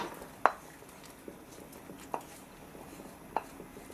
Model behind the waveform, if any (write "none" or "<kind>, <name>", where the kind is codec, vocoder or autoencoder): none